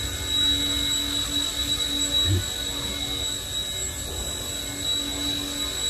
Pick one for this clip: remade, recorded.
recorded